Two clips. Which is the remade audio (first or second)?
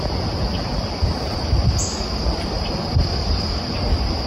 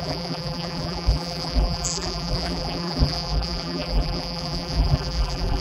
second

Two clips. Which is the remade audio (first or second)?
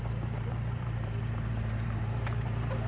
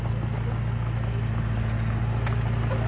first